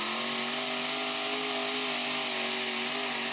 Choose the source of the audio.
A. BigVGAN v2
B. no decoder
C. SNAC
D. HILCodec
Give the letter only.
B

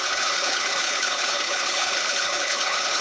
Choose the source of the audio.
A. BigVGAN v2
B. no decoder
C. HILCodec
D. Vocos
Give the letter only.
C